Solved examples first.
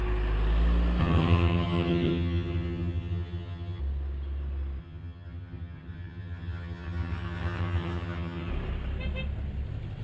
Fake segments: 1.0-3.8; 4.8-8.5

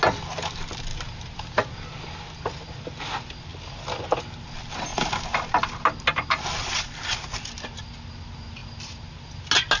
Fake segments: none

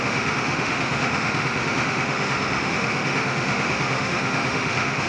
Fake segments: 0.0-5.1

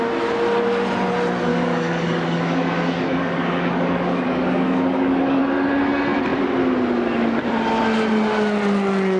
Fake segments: 1.5-5.4

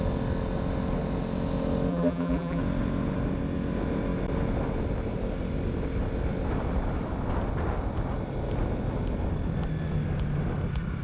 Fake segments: 1.9-2.6

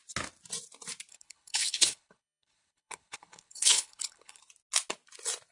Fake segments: 1.1-4.4

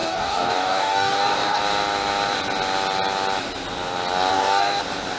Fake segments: 0.0-1.6; 4.3-4.8

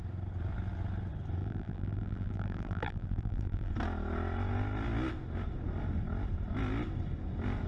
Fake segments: 1.4-3.7